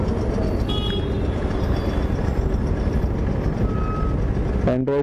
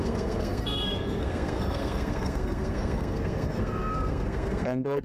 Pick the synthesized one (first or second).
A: second